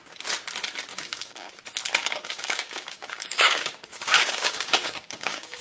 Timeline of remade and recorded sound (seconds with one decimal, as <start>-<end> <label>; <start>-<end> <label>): 0.0-0.9 recorded; 0.9-1.5 remade; 1.5-2.0 recorded; 2.0-5.6 remade